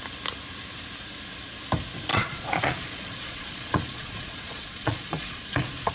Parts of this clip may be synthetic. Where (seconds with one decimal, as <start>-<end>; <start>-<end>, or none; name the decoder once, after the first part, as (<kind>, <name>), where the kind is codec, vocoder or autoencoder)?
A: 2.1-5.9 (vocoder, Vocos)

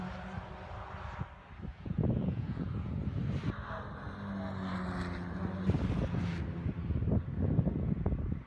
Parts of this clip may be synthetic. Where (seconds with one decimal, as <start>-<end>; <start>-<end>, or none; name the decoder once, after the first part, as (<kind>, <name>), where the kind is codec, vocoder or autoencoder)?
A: 1.7-2.9 (vocoder, Vocos)

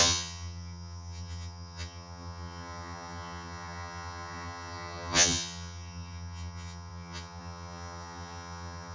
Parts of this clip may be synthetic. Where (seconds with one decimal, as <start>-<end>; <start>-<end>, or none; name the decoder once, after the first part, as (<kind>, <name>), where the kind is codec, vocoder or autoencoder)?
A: 0.0-8.9 (vocoder, HiFi-GAN)

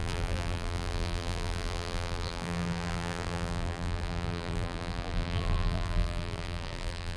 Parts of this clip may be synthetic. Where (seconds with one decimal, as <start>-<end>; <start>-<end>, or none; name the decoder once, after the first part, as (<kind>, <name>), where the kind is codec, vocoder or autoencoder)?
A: 0.0-7.2 (vocoder, BigVGAN v2)

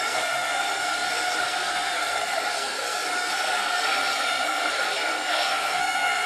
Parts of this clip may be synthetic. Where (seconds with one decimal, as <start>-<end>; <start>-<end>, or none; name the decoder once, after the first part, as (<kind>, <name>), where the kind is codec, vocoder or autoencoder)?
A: 0.0-6.3 (codec, SNAC)

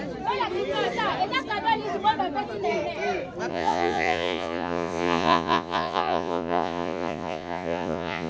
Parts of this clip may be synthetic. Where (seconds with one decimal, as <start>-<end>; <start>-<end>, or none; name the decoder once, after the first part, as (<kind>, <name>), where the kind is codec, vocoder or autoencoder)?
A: 3.5-8.3 (vocoder, Vocos)

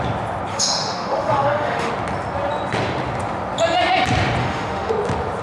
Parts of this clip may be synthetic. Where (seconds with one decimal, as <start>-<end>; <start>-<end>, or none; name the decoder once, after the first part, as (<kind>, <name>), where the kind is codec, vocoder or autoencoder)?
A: 0.5-1.9 (autoencoder, DAC-VAE); 4.4-4.9

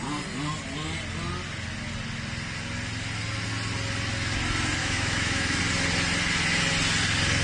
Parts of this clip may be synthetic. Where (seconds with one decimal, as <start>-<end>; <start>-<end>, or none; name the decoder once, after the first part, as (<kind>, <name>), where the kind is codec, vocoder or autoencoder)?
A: 4.8-5.6 (autoencoder, DAC-VAE)